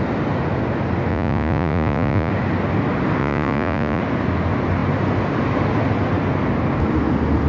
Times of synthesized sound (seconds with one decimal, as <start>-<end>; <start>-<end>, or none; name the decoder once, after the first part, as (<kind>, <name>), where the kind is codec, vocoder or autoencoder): 1.1-2.3 (vocoder, Vocos); 3.2-4.0